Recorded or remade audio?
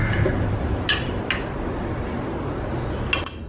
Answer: recorded